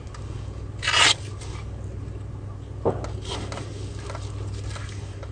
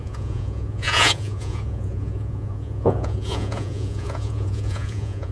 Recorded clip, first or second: first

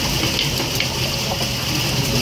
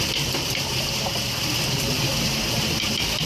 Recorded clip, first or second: first